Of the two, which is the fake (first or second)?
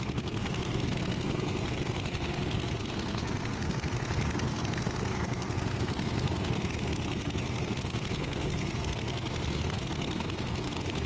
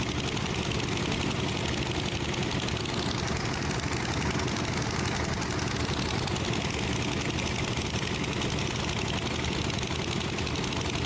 first